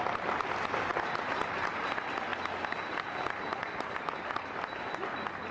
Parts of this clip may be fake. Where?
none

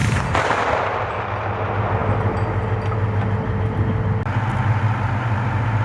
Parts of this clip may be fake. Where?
none

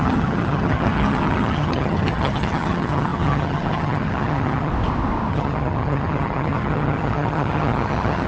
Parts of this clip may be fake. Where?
0.0-4.7 (vocoder, HiFi-GAN); 5.3-8.3

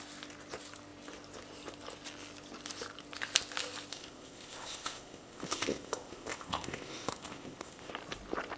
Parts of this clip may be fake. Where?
3.9-7.9 (codec, ZipCodec)

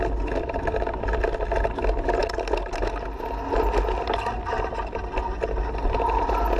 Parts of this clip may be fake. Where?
none